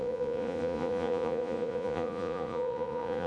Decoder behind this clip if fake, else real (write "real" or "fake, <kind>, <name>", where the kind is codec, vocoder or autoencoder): fake, vocoder, Vocos